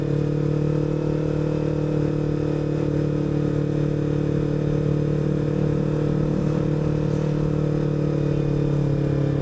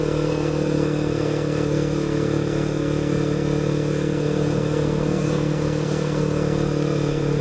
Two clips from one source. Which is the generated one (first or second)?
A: second